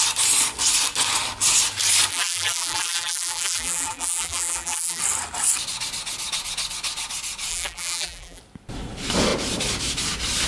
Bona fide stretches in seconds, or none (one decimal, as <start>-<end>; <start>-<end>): 0.0-2.1; 5.0-7.5; 8.4-10.5